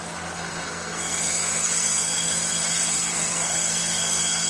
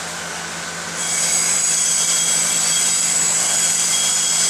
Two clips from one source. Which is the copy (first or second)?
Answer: first